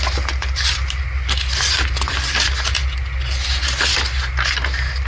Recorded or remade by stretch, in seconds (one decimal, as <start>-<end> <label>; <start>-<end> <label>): 0.0-5.1 recorded